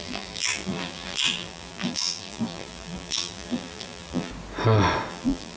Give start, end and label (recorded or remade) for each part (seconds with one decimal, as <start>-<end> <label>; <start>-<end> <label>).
0.0-4.3 remade; 4.3-5.1 recorded; 5.1-5.6 remade